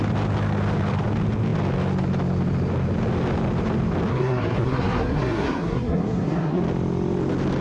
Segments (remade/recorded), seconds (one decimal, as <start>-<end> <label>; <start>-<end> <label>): 0.0-4.1 recorded; 4.1-6.6 remade; 6.6-7.6 recorded